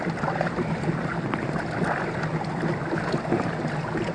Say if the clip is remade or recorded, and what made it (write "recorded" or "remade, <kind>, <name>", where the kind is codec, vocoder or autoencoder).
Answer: recorded